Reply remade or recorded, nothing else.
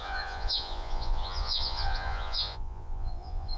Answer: remade